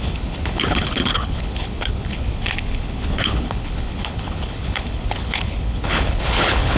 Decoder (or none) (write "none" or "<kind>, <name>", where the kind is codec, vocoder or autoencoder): codec, HILCodec